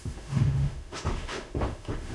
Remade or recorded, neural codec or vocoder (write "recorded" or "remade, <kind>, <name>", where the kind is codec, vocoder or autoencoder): remade, autoencoder, DAC-VAE